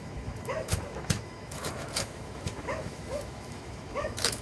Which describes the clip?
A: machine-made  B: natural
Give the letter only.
A